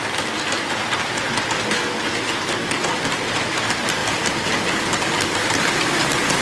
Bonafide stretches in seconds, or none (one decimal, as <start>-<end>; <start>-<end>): 0.0-6.4